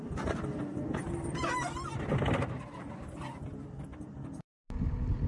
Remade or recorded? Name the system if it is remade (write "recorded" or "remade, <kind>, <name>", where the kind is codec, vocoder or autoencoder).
recorded